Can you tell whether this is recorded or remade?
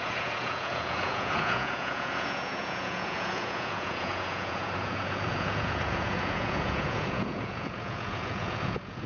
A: remade